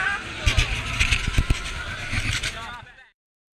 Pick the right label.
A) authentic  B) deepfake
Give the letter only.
A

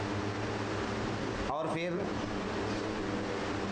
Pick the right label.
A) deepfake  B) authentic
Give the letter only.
B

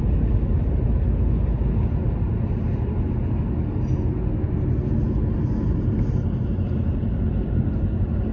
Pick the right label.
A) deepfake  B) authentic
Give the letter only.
B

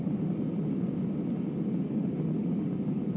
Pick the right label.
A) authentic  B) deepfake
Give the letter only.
A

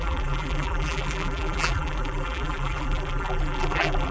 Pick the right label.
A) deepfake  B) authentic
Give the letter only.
A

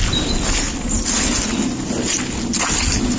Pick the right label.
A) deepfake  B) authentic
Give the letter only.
B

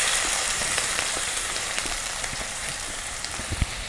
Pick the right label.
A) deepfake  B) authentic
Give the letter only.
A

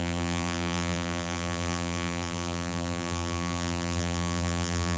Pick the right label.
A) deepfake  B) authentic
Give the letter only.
A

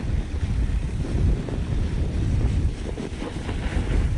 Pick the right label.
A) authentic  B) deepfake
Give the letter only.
B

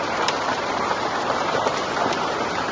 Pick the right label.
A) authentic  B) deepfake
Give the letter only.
B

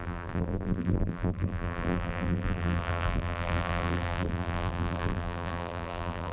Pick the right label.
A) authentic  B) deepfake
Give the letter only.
B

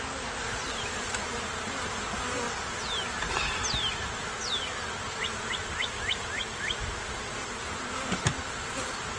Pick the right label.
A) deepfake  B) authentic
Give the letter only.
B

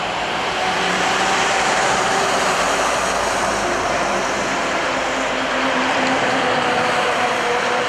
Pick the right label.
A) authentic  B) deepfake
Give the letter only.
B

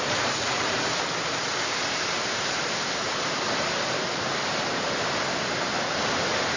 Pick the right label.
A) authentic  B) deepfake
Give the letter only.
B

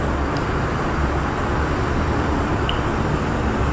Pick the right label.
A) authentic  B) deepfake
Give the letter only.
A